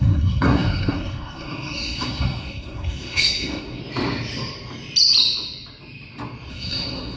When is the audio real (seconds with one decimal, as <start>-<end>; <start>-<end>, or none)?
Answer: 3.8-6.5